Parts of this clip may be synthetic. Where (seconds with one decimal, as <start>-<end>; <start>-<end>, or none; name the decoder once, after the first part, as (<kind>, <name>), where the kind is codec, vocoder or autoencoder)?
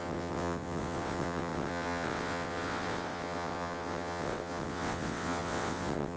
0.0-6.2 (vocoder, WaveNeXt)